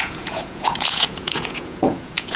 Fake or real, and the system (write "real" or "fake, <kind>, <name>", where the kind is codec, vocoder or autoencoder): fake, vocoder, Vocos